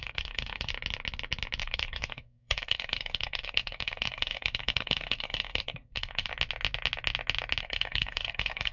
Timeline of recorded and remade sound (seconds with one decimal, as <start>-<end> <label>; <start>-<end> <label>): 0.0-0.7 remade; 0.7-1.6 recorded; 1.6-6.3 remade; 6.3-7.6 recorded; 7.6-8.7 remade